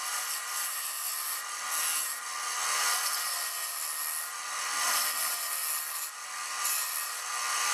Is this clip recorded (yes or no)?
yes